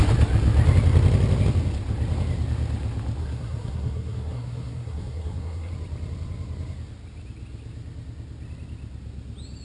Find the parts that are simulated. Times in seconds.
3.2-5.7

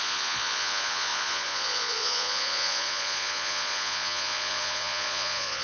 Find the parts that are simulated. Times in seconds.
0.0-5.6

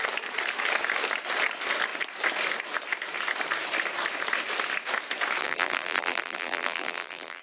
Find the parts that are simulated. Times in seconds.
5.4-7.4

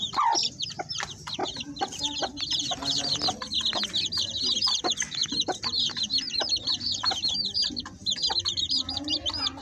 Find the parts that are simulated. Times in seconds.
none

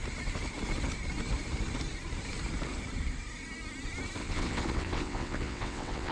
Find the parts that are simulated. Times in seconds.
4.2-6.1

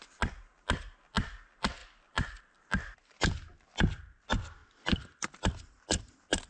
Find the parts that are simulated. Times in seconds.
none

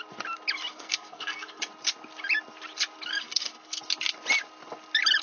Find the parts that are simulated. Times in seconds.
0.7-1.6; 3.2-3.8

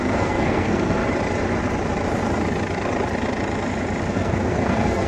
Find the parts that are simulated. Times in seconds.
0.0-1.0; 4.1-5.1